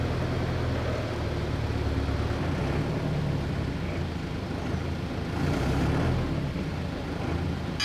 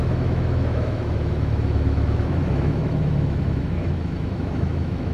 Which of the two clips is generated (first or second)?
second